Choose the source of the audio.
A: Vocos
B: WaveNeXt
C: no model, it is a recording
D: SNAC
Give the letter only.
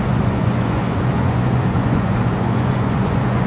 A